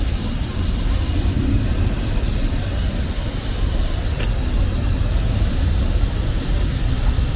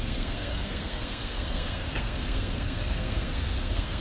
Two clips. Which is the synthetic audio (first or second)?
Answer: second